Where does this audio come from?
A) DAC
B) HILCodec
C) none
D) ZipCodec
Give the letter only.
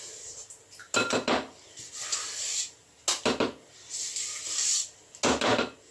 C